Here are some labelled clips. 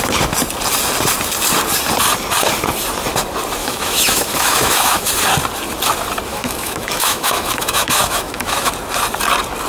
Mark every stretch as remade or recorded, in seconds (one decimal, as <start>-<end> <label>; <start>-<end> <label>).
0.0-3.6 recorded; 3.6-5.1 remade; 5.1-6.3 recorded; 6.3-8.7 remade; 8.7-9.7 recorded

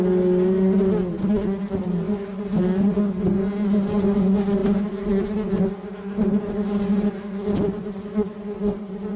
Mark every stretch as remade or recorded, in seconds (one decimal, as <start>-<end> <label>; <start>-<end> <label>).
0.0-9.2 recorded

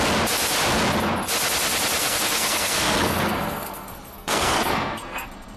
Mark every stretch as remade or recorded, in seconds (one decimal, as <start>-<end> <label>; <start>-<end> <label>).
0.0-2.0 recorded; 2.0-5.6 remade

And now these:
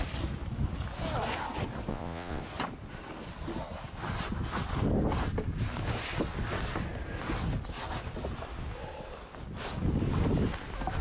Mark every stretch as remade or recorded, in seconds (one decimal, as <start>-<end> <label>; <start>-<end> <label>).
0.0-1.9 recorded; 1.9-2.4 remade; 2.4-11.0 recorded

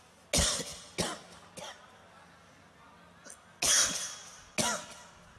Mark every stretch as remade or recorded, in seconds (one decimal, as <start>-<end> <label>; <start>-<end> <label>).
0.0-5.4 recorded